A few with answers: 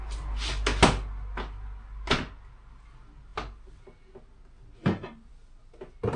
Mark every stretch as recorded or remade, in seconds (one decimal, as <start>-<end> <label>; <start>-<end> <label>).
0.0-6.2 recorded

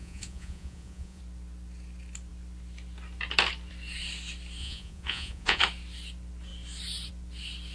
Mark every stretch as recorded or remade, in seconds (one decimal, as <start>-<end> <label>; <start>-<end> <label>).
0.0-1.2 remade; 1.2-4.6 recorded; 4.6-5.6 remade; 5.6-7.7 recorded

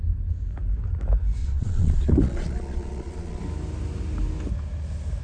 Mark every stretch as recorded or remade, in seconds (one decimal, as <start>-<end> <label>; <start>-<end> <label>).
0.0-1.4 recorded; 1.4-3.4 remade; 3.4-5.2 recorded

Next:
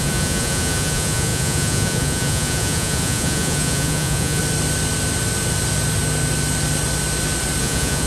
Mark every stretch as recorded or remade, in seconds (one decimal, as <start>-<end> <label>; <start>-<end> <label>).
0.0-4.4 remade; 4.4-7.6 recorded; 7.6-8.1 remade